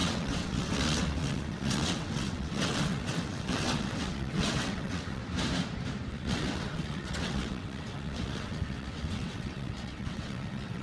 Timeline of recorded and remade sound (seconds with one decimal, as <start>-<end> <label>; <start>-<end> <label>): 0.0-5.2 remade; 5.2-6.1 recorded; 6.1-10.8 remade